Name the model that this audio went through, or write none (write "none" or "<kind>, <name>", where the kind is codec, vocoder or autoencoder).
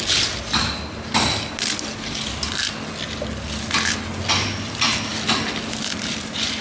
none